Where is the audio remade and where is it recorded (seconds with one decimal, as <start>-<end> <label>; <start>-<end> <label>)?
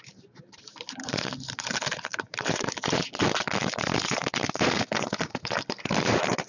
0.0-6.5 remade